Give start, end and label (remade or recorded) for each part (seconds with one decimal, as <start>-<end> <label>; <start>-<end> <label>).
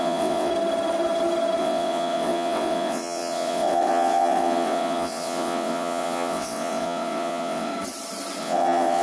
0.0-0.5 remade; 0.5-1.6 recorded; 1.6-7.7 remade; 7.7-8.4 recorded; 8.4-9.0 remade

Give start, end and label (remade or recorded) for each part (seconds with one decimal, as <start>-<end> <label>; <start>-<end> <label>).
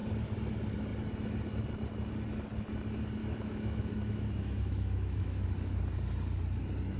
0.0-3.2 recorded; 3.2-5.8 remade; 5.8-7.0 recorded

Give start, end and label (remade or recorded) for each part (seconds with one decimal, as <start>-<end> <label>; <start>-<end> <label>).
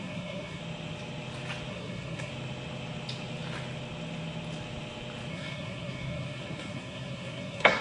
0.0-0.6 remade; 0.6-1.7 recorded; 1.7-2.3 remade; 2.3-5.3 recorded; 5.3-7.8 remade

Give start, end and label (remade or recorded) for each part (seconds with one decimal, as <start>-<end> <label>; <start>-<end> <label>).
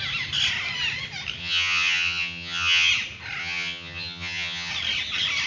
0.0-1.4 recorded; 1.4-2.9 remade; 2.9-3.4 recorded; 3.4-4.7 remade; 4.7-5.5 recorded